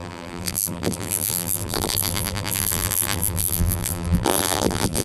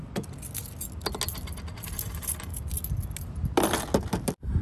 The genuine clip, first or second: second